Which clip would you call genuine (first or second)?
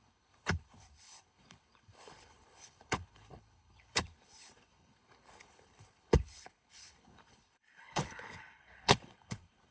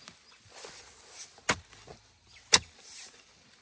second